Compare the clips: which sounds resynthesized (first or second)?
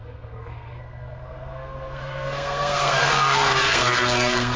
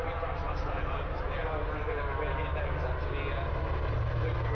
first